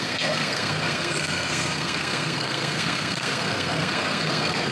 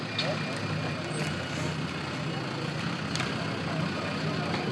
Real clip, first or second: second